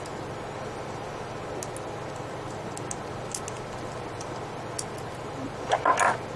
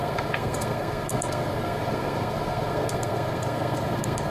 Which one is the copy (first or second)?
second